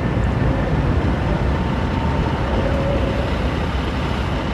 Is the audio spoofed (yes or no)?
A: no